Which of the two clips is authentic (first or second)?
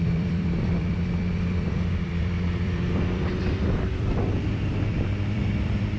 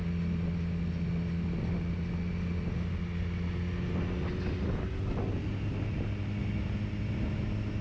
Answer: second